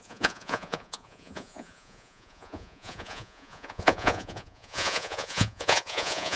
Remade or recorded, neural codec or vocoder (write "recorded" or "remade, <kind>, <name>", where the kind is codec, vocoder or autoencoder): remade, vocoder, Vocos